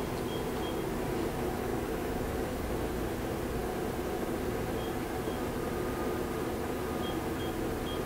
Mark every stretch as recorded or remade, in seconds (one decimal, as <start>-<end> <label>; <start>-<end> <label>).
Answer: 0.0-1.7 recorded; 1.7-2.7 remade; 2.7-8.1 recorded